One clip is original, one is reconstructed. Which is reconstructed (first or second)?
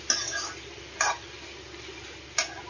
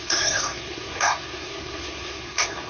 second